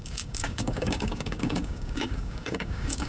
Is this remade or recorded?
remade